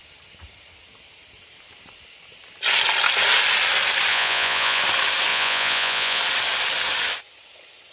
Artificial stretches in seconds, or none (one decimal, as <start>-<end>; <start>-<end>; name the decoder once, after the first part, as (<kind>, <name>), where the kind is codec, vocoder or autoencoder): 4.1-4.8 (vocoder, Vocos); 5.3-6.2